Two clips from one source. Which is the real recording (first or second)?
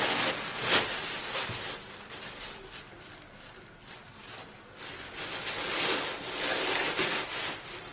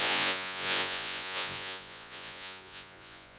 first